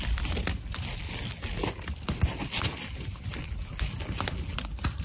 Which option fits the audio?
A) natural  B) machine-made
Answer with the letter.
A